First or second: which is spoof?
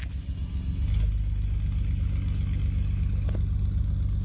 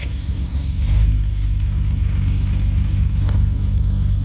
second